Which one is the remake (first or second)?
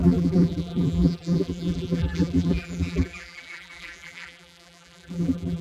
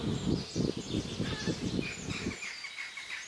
first